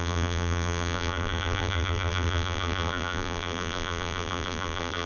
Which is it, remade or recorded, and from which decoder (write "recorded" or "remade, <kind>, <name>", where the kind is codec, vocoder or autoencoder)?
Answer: remade, vocoder, BigVGAN v2